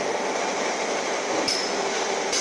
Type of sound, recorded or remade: remade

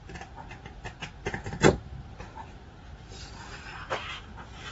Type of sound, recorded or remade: recorded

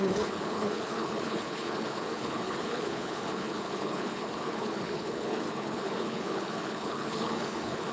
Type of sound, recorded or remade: remade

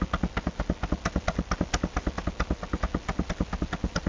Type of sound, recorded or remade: recorded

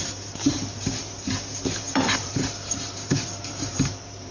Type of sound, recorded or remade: remade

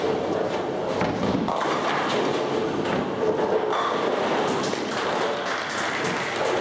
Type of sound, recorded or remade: recorded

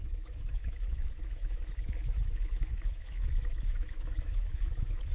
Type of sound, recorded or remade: remade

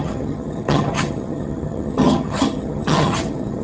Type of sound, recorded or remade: remade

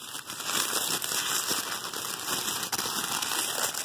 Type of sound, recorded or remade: recorded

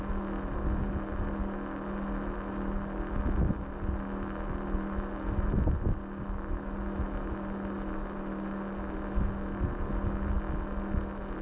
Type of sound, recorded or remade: recorded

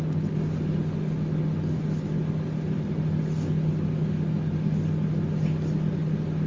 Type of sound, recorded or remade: recorded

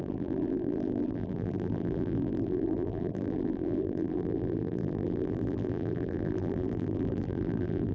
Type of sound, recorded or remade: remade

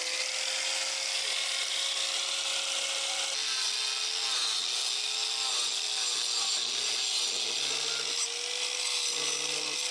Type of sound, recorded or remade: recorded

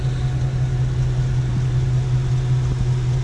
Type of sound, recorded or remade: recorded